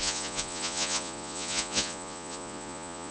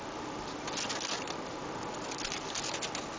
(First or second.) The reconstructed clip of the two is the first